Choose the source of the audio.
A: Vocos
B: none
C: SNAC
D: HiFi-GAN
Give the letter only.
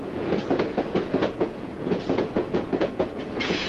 A